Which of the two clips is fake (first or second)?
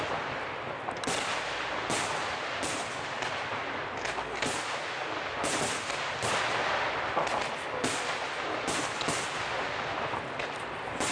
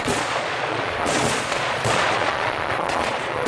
second